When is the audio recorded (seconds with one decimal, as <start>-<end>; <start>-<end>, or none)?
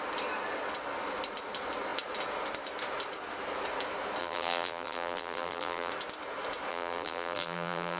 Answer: 0.0-4.2; 5.9-6.7